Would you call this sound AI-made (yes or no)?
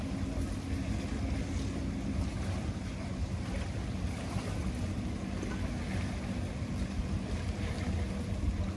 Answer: no